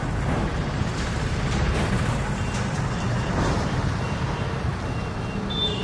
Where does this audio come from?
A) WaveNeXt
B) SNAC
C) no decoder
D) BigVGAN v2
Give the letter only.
D